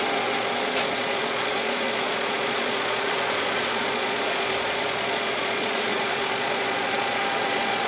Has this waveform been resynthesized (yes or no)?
yes